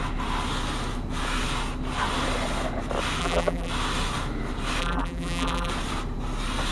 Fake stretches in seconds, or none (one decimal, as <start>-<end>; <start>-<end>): 3.2-3.7; 4.8-5.7